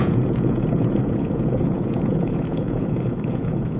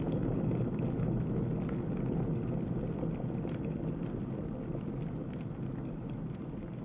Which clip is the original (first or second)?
second